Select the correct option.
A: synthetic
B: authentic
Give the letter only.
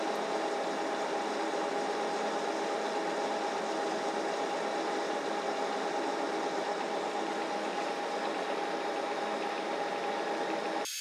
B